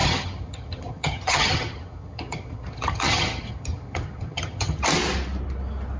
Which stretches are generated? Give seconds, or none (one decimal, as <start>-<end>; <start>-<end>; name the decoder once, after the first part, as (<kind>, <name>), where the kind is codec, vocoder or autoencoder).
0.0-4.8 (vocoder, HiFi-GAN)